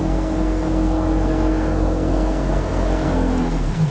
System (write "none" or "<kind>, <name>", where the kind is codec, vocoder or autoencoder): codec, SNAC